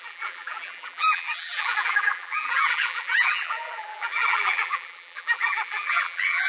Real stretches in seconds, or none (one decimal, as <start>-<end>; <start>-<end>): none